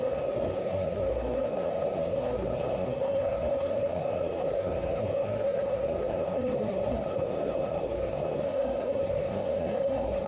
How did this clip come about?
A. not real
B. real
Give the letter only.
A